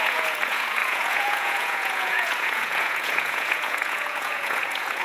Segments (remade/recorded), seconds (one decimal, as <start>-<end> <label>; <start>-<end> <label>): 0.0-5.0 remade